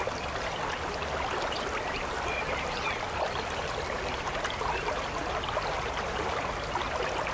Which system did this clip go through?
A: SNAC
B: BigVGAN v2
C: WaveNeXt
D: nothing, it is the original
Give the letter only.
D